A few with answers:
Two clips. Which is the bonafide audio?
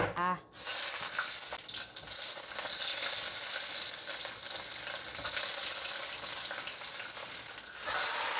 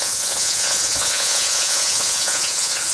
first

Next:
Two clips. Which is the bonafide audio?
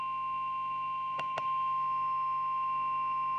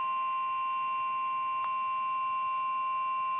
second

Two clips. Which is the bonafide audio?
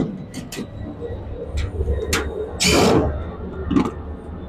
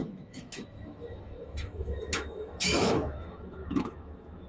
first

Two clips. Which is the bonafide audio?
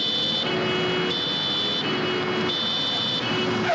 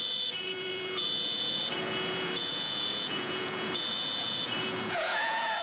first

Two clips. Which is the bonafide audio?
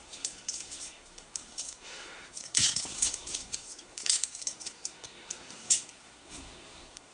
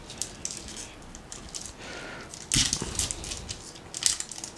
second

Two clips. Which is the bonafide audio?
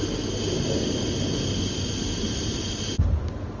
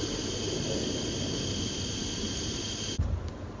first